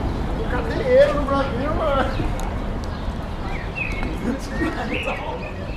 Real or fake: real